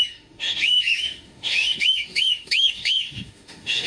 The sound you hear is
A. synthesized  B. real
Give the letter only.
A